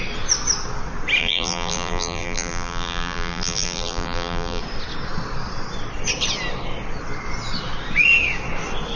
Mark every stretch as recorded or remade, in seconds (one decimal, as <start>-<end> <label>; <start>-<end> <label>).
0.0-1.2 recorded; 1.2-4.6 remade; 4.6-9.0 recorded